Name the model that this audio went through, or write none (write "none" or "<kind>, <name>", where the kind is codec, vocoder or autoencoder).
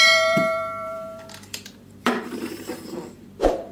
vocoder, BigVGAN v2